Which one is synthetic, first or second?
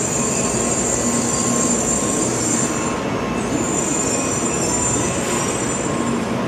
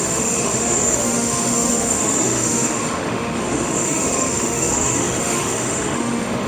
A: second